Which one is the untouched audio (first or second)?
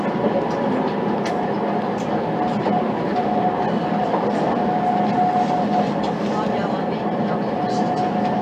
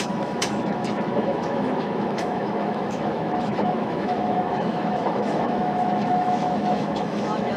first